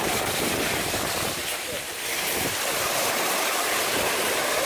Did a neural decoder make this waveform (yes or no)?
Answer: no